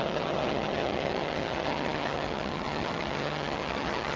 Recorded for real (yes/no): no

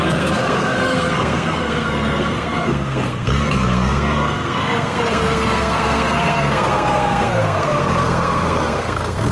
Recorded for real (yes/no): no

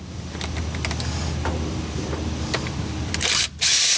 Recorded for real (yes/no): yes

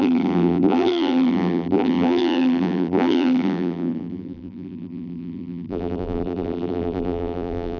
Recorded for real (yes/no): no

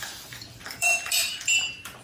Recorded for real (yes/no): no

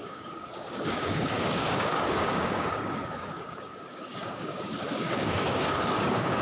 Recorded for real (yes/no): no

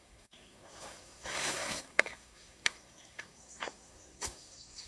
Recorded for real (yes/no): no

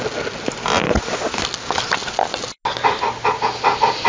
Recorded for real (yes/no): yes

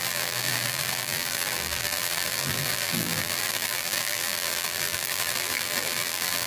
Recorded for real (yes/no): no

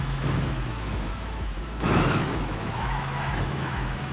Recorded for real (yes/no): no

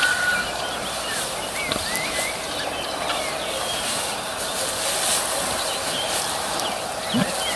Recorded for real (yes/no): yes